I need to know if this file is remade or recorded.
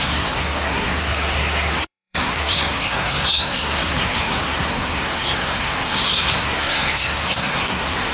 remade